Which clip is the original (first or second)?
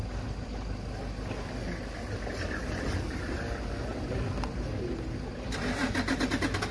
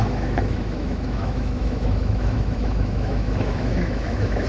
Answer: first